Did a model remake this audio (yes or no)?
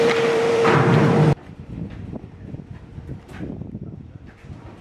yes